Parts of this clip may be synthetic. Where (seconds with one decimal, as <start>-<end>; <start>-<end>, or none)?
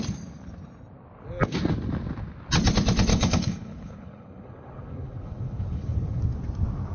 3.1-6.2